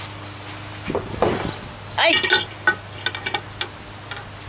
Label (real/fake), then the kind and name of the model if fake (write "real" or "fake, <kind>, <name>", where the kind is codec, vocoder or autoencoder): real